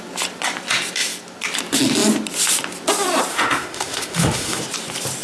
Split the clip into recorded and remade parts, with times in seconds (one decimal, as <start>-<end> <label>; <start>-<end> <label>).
0.0-3.3 recorded; 3.3-4.6 remade; 4.6-5.2 recorded